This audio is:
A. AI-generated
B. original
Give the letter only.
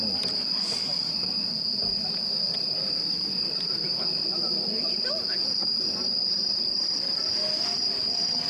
B